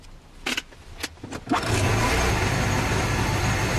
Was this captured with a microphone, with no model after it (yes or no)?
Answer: yes